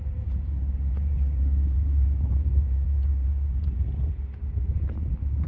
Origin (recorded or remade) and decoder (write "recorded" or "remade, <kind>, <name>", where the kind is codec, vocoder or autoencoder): remade, vocoder, BigVGAN v2